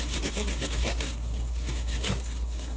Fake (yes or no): yes